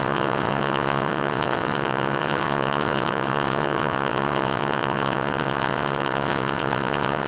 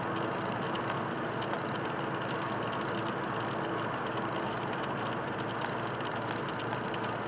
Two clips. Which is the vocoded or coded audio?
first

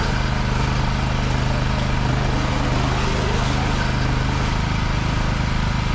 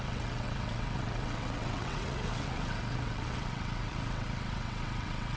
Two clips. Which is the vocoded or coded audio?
second